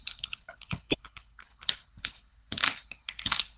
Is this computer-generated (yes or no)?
yes